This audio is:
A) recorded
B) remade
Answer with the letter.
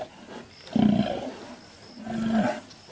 A